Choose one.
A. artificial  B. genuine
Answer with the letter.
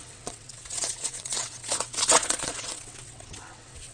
A